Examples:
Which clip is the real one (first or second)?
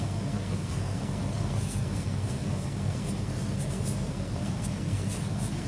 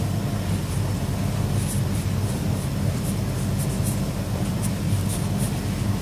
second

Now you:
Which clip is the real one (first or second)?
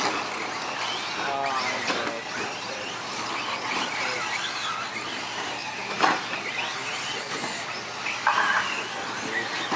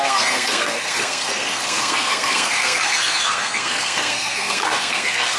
first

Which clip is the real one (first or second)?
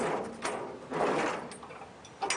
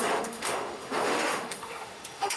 first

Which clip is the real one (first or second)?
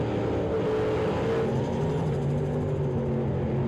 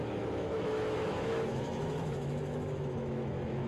first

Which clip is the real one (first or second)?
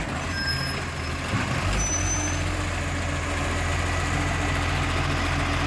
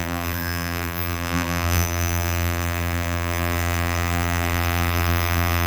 first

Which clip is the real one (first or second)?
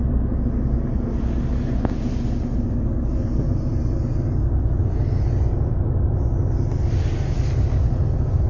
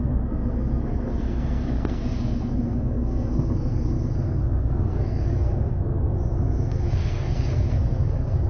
first